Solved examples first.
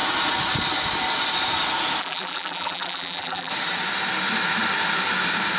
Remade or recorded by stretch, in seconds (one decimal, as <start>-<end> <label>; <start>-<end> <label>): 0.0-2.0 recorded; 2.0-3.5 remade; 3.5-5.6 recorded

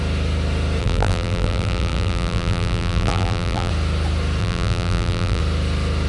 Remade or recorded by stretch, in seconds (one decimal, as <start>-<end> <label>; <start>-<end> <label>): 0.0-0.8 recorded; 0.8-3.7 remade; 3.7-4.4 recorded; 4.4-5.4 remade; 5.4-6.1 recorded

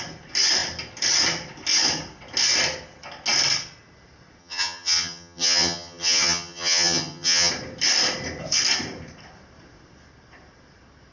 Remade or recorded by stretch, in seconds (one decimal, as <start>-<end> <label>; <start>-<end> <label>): 0.0-4.4 recorded; 4.4-7.5 remade; 7.5-11.1 recorded

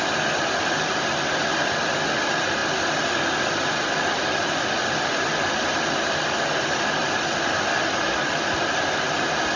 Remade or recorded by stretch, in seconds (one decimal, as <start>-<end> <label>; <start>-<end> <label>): 0.0-9.6 recorded